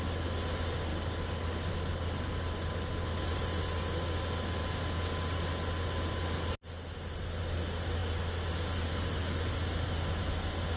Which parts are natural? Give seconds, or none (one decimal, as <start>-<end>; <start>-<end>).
0.0-10.8